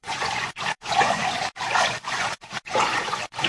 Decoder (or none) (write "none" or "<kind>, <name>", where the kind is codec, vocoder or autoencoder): vocoder, Vocos